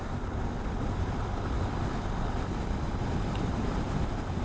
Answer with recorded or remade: remade